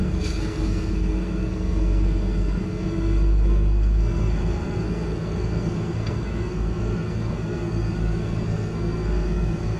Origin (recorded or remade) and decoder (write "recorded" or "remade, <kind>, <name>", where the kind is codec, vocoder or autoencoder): remade, codec, SNAC